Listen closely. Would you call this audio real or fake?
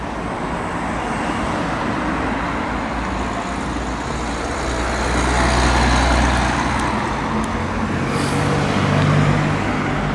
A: real